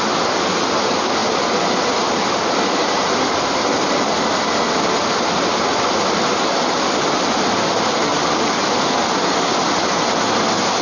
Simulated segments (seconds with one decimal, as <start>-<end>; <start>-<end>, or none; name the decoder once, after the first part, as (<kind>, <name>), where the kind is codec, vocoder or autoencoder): none